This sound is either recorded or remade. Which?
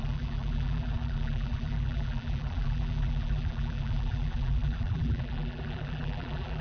remade